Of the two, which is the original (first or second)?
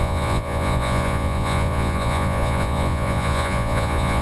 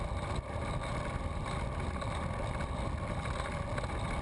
second